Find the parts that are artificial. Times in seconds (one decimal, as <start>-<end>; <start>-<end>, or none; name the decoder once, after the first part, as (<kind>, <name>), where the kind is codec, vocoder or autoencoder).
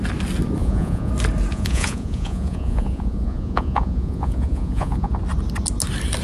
0.6-1.1 (vocoder, Vocos); 1.5-5.2